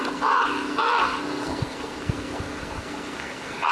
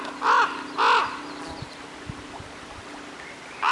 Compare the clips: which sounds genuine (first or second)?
second